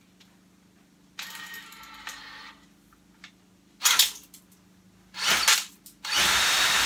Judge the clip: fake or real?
real